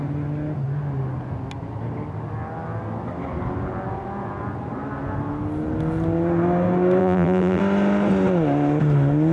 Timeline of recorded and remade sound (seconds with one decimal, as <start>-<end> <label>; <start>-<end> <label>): 0.0-7.0 recorded; 7.0-7.6 remade; 7.6-9.3 recorded